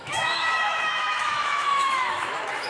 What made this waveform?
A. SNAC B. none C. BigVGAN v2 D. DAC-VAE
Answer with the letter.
D